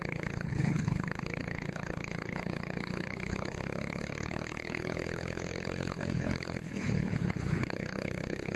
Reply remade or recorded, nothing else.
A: remade